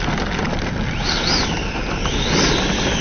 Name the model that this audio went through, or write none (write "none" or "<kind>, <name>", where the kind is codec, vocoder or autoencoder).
none